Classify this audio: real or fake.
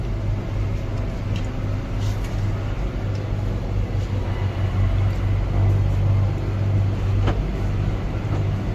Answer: real